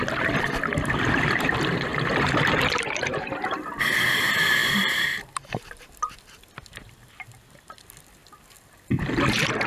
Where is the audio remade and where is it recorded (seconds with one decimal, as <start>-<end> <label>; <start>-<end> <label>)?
0.0-1.9 recorded; 1.9-3.6 remade; 3.6-4.6 recorded; 4.6-5.9 remade; 5.9-9.7 recorded